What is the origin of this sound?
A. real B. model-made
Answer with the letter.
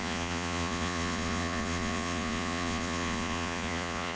B